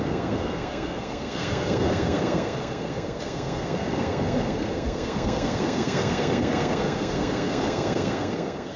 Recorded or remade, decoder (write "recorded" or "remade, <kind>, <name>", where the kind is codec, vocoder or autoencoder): remade, codec, SNAC